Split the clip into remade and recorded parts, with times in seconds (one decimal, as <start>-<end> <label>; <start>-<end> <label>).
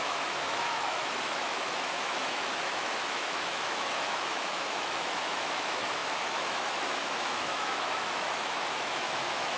0.0-9.6 remade